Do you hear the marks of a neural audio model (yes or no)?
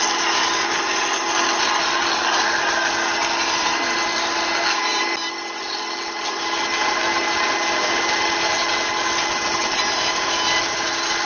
no